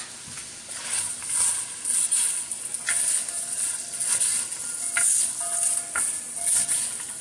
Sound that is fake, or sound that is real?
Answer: real